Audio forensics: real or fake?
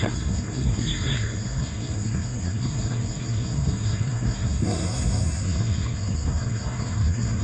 fake